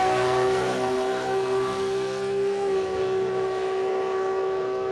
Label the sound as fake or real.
fake